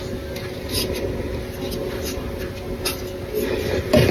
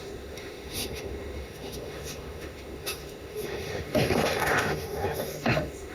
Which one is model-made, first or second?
second